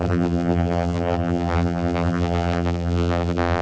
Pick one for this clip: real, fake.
fake